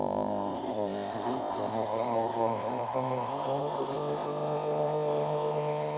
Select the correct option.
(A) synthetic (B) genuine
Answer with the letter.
A